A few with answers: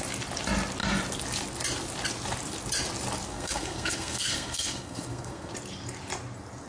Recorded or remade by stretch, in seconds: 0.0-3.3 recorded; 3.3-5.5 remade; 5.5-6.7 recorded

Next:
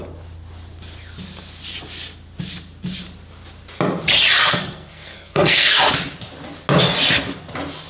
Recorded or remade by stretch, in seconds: 0.0-4.4 recorded; 4.4-5.8 remade; 5.8-7.9 recorded

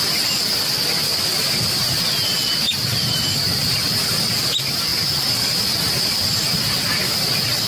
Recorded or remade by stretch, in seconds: 0.0-7.7 recorded

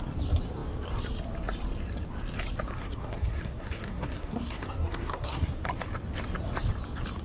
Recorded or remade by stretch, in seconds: 0.0-2.8 recorded; 2.8-5.6 remade; 5.6-7.2 recorded

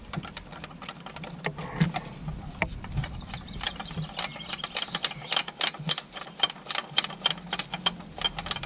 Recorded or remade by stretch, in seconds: 0.0-8.7 recorded